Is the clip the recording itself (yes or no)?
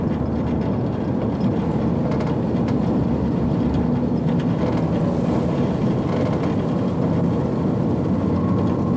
yes